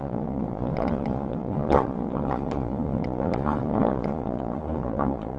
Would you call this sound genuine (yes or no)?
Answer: no